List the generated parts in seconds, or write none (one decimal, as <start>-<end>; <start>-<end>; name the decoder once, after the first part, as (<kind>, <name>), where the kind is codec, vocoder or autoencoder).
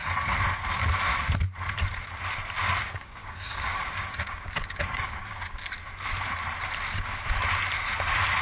2.8-5.6 (codec, DAC)